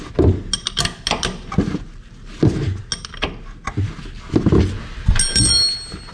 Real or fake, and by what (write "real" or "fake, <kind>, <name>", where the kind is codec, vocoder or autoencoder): real